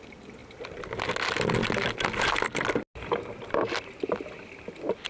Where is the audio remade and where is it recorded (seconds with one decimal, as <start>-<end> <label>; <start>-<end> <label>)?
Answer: 0.0-5.1 recorded